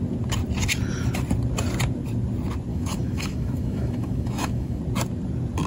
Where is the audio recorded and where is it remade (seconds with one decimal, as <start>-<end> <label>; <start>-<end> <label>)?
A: 0.0-2.7 recorded; 2.7-4.8 remade; 4.8-5.7 recorded